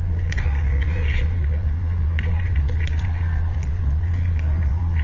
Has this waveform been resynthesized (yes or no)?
yes